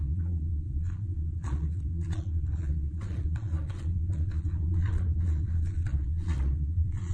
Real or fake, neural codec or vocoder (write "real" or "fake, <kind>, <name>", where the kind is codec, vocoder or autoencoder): fake, vocoder, Vocos